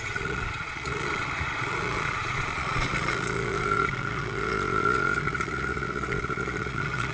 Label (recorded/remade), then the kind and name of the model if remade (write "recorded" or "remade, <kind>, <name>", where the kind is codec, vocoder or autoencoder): remade, vocoder, Vocos